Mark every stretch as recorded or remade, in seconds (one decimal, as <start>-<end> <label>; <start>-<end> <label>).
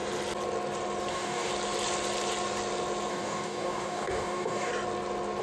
0.0-1.1 recorded; 1.1-1.5 remade; 1.5-3.1 recorded; 3.1-4.7 remade; 4.7-5.4 recorded